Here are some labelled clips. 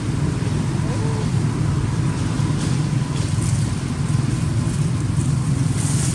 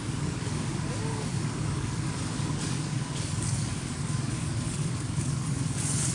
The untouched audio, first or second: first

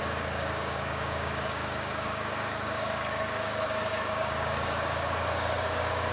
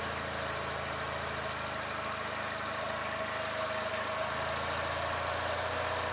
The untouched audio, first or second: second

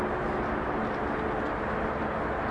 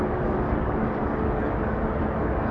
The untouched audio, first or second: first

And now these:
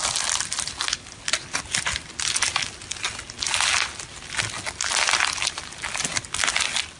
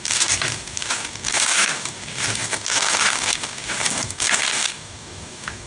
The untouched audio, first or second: first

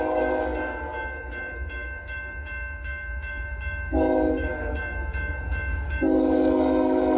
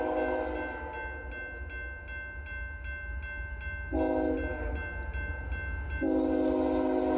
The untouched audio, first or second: second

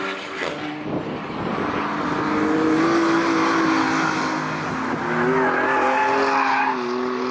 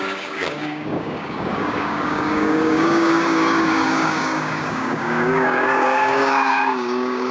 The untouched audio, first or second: first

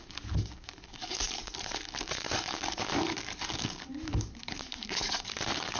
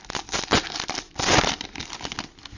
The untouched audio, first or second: second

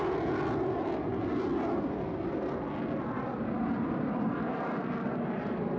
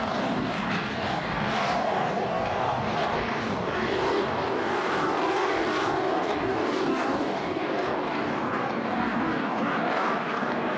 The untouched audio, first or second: first